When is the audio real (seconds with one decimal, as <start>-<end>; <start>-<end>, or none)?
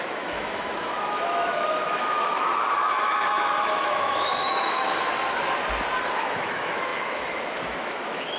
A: 5.1-6.2